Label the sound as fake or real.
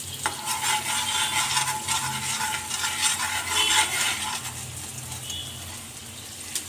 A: real